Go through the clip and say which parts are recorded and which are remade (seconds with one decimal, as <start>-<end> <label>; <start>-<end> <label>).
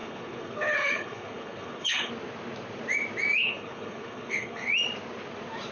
0.0-2.1 remade; 2.1-3.4 recorded; 3.4-4.7 remade; 4.7-5.7 recorded